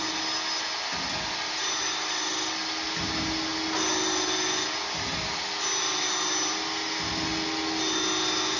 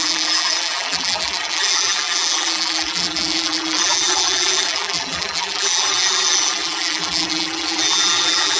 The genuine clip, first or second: first